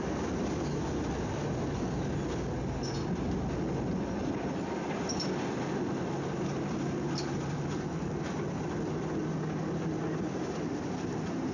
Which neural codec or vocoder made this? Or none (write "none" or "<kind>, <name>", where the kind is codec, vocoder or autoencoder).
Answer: none